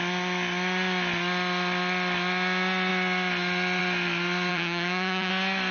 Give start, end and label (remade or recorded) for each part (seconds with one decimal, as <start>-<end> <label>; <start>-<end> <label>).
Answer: 0.0-4.5 recorded; 4.5-5.3 remade; 5.3-5.7 recorded